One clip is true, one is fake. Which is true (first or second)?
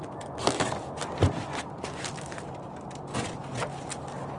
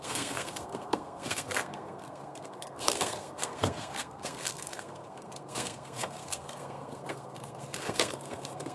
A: first